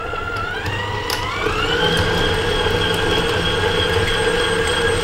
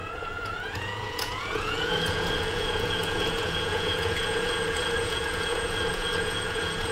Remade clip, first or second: second